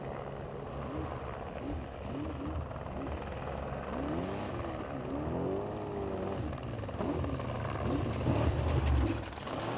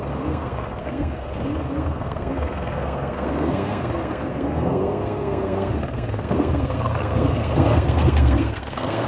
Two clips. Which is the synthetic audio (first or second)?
second